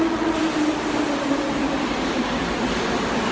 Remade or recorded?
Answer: recorded